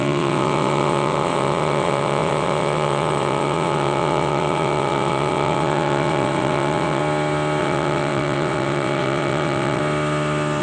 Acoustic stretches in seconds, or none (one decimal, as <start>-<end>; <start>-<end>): 7.0-7.6; 9.8-10.6